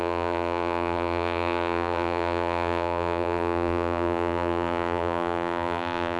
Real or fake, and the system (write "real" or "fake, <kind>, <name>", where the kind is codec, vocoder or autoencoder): fake, vocoder, BigVGAN v2